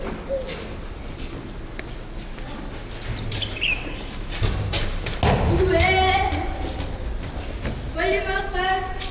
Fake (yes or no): no